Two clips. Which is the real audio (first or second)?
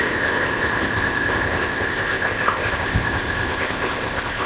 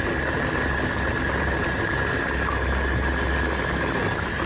second